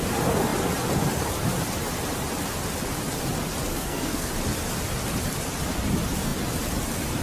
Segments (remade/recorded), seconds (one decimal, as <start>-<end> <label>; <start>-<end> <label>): 0.0-3.7 recorded; 3.7-4.3 remade; 4.3-7.2 recorded